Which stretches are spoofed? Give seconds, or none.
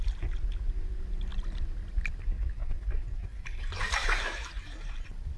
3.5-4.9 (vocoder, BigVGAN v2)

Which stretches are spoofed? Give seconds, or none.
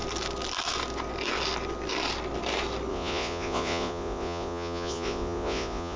2.9-6.0 (vocoder, Vocos)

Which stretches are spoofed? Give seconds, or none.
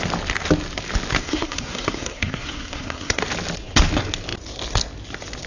1.2-3.2 (codec, SNAC)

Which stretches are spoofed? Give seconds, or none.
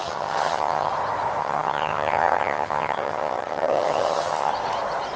0.0-0.9 (vocoder, HiFi-GAN); 1.4-4.5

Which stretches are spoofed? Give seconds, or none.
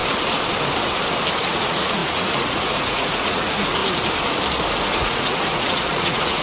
1.5-3.8 (vocoder, Vocos); 5.0-6.4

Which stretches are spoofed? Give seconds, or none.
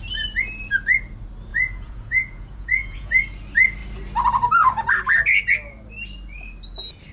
1.5-3.1 (vocoder, Vocos)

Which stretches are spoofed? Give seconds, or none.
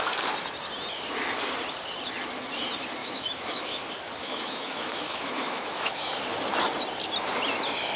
3.0-3.8 (autoencoder, DAC-VAE); 4.2-6.1